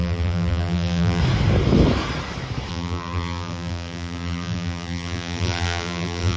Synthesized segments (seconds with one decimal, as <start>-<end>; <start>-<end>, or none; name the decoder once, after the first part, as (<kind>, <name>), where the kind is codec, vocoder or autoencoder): 0.0-1.2 (vocoder, BigVGAN v2); 2.7-6.4